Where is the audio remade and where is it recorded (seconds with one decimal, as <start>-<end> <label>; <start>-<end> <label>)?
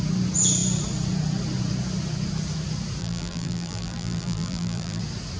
0.0-3.0 recorded; 3.0-5.0 remade; 5.0-5.4 recorded